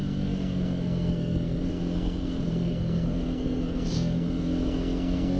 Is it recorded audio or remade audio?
remade